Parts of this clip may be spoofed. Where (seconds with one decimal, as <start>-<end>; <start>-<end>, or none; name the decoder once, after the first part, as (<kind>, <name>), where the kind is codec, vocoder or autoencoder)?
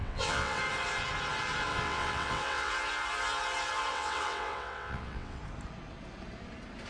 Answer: 0.0-0.6 (vocoder, WaveNeXt); 1.7-2.7; 3.9-5.4